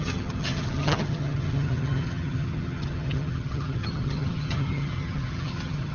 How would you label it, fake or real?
fake